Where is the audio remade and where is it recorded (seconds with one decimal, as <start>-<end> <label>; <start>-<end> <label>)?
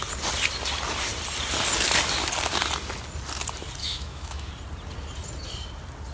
0.0-3.8 recorded; 3.8-4.5 remade; 4.5-6.1 recorded